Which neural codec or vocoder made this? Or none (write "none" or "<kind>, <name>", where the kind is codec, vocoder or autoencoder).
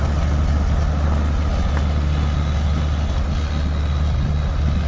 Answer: none